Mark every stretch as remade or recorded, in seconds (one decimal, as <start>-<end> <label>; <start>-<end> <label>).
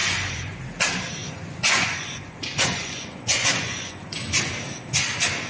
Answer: 0.0-0.6 remade; 0.6-1.2 recorded; 1.2-4.4 remade; 4.4-5.5 recorded